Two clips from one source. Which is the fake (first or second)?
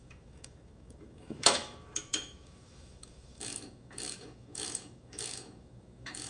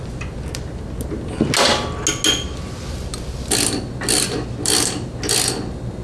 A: first